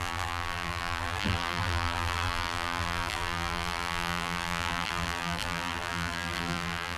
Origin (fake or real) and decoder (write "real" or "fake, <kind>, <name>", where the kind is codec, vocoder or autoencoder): fake, vocoder, BigVGAN v2